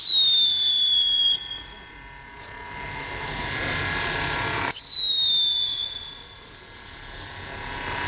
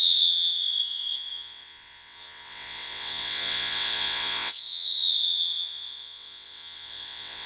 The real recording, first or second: first